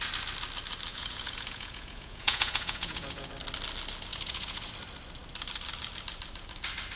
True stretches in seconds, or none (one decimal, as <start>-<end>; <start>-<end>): 0.0-0.9; 3.3-4.1; 4.7-7.0